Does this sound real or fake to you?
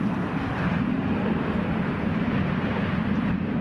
real